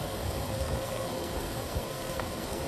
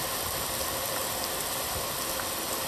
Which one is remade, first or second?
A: first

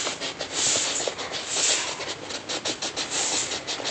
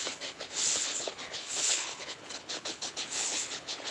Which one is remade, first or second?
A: second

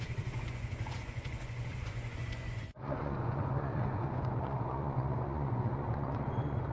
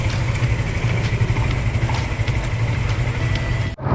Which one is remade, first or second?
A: first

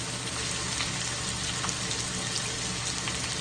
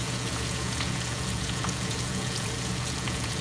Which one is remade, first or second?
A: second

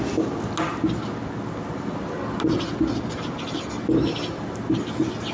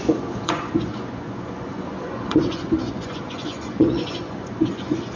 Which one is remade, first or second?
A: second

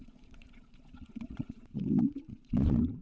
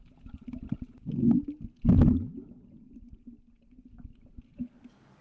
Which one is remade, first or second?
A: first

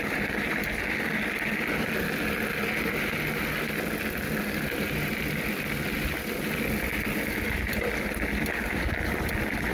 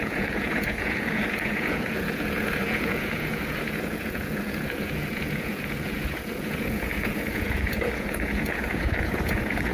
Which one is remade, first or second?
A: second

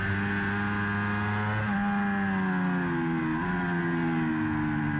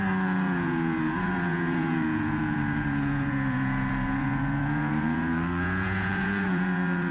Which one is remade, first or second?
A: second